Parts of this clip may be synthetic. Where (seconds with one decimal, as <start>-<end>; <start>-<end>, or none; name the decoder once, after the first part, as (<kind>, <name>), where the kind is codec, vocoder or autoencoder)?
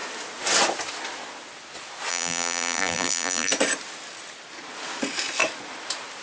2.1-3.5 (vocoder, BigVGAN v2)